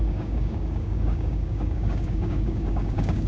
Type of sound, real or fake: fake